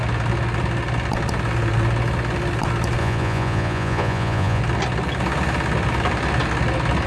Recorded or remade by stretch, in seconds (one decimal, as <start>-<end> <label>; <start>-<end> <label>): 0.0-3.0 recorded; 3.0-4.6 remade; 4.6-7.1 recorded

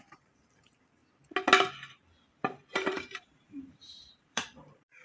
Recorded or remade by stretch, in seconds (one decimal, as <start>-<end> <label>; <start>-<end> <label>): 0.0-1.0 remade; 1.0-2.7 recorded; 2.7-5.0 remade

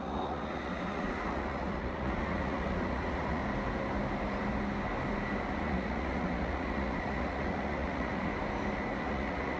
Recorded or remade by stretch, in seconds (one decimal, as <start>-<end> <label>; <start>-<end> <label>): 0.0-3.4 remade; 3.4-5.5 recorded; 5.5-8.3 remade; 8.3-9.0 recorded; 9.0-9.6 remade

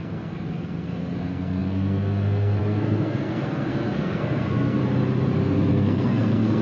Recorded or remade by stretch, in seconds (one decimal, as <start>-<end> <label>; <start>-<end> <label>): 0.0-4.8 remade; 4.8-5.7 recorded; 5.7-6.6 remade

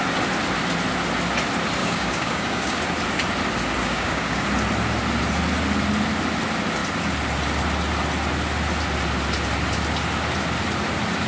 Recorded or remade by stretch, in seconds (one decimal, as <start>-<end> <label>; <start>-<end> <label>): 0.0-1.8 recorded; 1.8-2.8 remade; 2.8-3.8 recorded; 3.8-4.5 remade; 4.5-11.3 recorded